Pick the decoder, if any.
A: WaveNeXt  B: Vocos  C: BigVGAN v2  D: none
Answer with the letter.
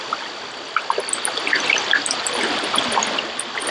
D